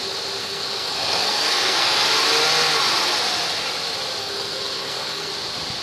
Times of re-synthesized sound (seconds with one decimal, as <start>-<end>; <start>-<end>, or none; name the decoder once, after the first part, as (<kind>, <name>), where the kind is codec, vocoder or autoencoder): 0.4-2.1 (codec, SNAC); 4.2-5.3